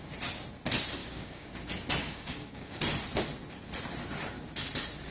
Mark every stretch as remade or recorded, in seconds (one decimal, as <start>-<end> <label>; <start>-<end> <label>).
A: 0.0-1.0 recorded; 1.0-1.5 remade; 1.5-2.0 recorded; 2.0-2.8 remade; 2.8-5.1 recorded